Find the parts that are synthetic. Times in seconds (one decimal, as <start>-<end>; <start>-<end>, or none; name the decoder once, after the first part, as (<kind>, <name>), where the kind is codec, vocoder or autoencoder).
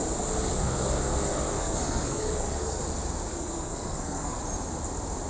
1.6-2.8 (codec, SNAC); 3.3-4.4